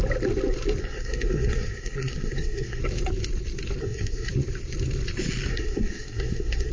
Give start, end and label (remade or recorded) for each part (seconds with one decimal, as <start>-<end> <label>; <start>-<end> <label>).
0.0-0.8 recorded; 0.8-2.8 remade; 2.8-3.8 recorded; 3.8-4.3 remade; 4.3-5.5 recorded; 5.5-6.7 remade